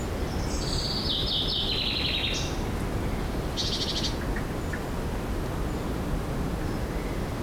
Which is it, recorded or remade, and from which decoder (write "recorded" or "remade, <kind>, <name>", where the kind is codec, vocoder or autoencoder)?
recorded